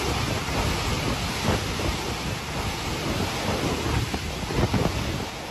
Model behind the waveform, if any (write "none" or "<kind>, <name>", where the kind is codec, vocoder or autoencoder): none